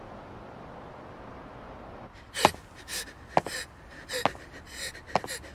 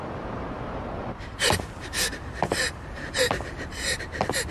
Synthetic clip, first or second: second